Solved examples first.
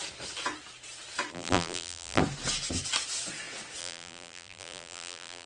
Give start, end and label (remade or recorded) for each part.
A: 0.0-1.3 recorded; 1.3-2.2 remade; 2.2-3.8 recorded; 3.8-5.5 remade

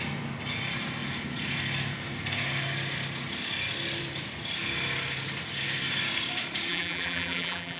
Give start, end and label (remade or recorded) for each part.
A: 0.0-6.7 recorded; 6.7-7.8 remade

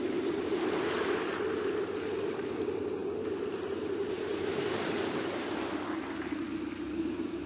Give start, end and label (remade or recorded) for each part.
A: 0.0-7.5 recorded

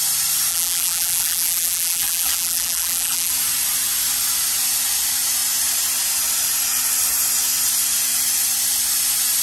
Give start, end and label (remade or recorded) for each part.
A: 0.0-0.5 recorded; 0.5-3.3 remade; 3.3-9.4 recorded

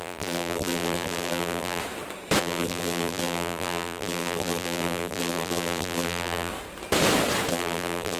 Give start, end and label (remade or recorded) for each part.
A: 0.0-1.8 remade; 1.8-2.4 recorded; 2.4-6.5 remade; 6.5-7.5 recorded; 7.5-8.2 remade

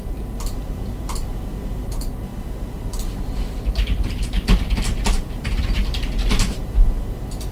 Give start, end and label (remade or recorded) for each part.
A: 0.0-2.3 recorded; 2.3-5.9 remade; 5.9-7.5 recorded

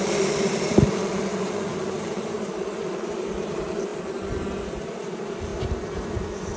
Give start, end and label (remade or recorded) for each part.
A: 0.0-5.5 remade; 5.5-6.6 recorded

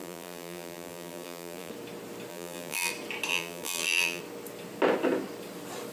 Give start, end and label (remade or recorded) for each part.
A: 0.0-1.7 remade; 1.7-2.3 recorded; 2.3-2.9 remade; 2.9-3.3 recorded; 3.3-4.2 remade; 4.2-5.9 recorded